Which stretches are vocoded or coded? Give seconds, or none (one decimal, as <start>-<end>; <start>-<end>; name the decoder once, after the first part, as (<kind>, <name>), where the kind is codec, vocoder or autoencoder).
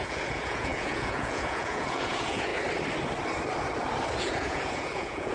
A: 0.0-2.5 (vocoder, Vocos); 4.2-5.3